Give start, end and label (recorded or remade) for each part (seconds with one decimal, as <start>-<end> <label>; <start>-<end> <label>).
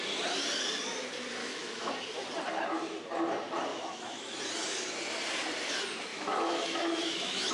0.0-1.4 recorded; 1.4-1.9 remade; 1.9-3.7 recorded; 3.7-4.4 remade; 4.4-6.1 recorded; 6.1-7.5 remade